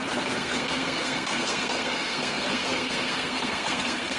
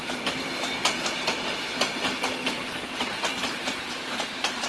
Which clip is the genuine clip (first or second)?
second